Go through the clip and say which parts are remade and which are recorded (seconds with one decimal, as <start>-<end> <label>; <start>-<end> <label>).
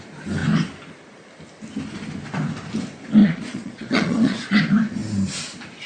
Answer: 0.0-3.2 recorded; 3.2-4.6 remade; 4.6-5.9 recorded